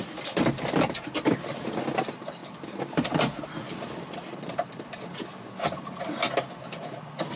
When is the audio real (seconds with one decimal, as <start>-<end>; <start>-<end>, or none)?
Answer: 0.0-2.4; 4.0-7.4